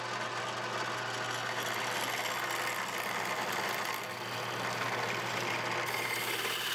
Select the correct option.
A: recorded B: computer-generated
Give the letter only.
A